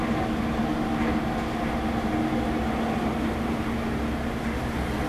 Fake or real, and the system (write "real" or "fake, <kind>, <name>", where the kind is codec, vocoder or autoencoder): real